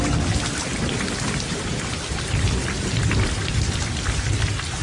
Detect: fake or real real